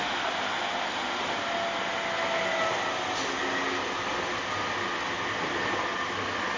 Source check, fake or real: real